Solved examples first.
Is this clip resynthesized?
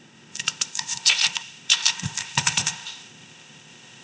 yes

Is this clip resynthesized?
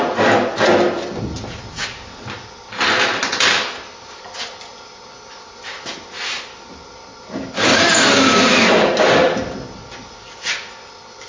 no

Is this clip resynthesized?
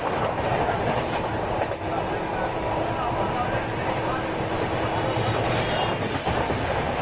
no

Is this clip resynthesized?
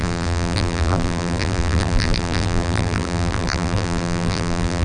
yes